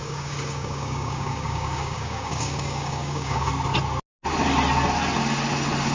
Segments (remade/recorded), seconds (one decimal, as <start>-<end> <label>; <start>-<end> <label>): 0.0-3.5 remade; 3.5-5.9 recorded